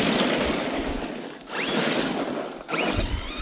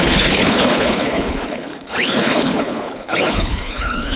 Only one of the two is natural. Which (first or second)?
first